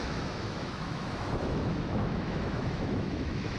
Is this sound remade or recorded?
remade